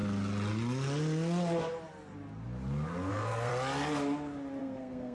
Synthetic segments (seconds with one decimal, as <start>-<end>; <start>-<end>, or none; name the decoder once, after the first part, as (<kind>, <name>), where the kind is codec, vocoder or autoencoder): 3.1-3.5 (codec, SNAC); 4.6-5.1